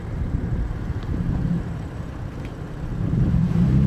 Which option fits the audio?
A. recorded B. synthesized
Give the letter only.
B